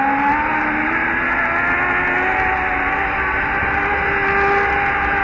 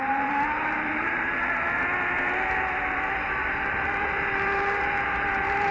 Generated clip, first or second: second